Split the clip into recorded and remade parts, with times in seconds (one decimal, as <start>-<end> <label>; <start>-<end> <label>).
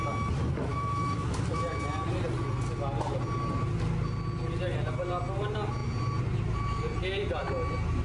0.0-0.7 recorded; 0.7-1.4 remade; 1.4-8.0 recorded